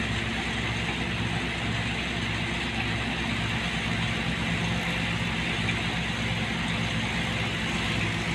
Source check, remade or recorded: recorded